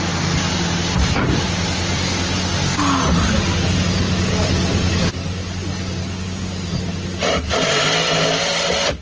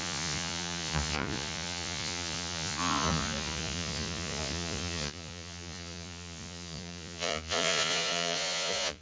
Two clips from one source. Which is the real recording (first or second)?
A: first